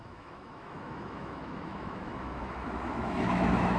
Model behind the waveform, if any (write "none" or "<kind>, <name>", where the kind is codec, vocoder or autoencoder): autoencoder, DAC-VAE